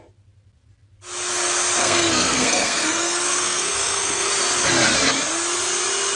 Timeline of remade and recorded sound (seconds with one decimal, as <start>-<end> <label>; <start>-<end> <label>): 0.0-1.8 recorded; 1.8-4.3 remade; 4.3-6.2 recorded